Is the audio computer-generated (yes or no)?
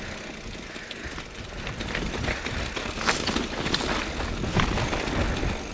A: no